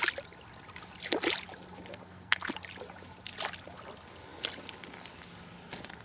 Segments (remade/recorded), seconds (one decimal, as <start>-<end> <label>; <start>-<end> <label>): 0.0-1.9 recorded; 1.9-2.5 remade; 2.5-6.0 recorded